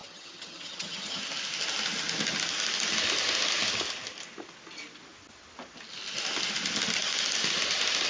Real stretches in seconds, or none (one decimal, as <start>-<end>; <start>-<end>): 1.2-8.1

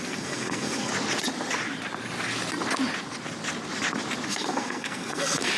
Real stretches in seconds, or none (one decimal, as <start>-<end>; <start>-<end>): 0.9-4.3

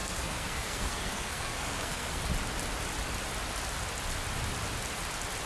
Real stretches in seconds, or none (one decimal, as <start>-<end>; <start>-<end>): 2.2-5.5

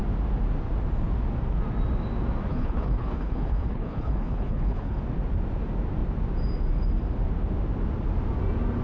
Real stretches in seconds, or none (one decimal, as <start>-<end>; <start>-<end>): 0.0-2.5; 5.0-8.8

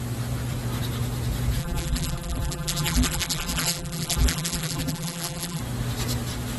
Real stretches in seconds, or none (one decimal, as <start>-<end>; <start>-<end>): 0.0-1.6; 5.6-6.6

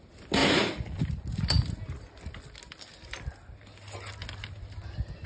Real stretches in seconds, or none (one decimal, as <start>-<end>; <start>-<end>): 0.0-5.3

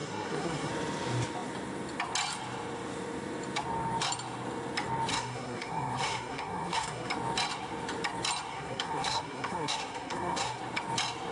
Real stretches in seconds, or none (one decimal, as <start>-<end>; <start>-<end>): 0.7-5.1; 7.1-8.5; 10.6-11.3

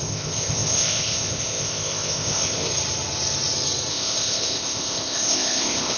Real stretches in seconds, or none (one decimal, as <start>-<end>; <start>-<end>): 2.7-3.9